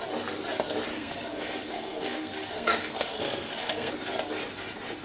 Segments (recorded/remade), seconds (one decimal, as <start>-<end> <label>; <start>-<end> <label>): 0.0-0.9 recorded; 0.9-3.9 remade; 3.9-5.0 recorded